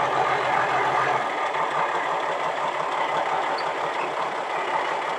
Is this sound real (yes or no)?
yes